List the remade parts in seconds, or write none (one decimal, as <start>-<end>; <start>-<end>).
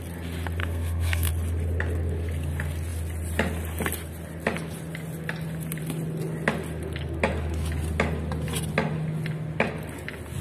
0.6-1.3